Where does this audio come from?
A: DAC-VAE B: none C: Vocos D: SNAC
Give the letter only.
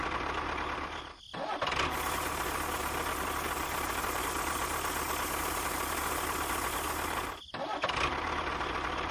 B